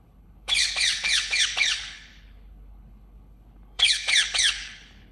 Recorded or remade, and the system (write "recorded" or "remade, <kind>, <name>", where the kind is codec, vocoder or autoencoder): remade, codec, HILCodec